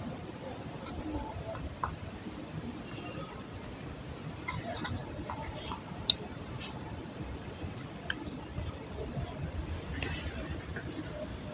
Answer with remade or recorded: remade